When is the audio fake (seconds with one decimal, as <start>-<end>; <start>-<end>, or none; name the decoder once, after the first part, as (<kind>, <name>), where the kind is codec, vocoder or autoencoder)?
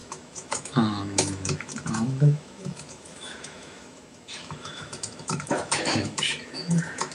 0.0-7.1 (autoencoder, DAC-VAE)